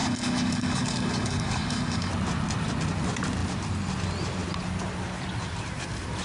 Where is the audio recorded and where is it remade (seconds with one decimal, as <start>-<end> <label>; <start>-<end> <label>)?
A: 0.0-2.1 remade; 2.1-6.2 recorded